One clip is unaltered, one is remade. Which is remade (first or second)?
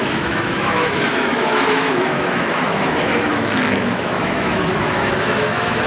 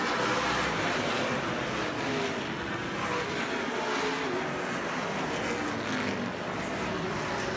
first